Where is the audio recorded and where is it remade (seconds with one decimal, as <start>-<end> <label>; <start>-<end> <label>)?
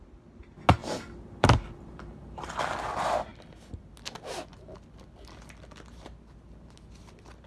0.0-0.8 recorded; 0.8-2.6 remade; 2.6-7.5 recorded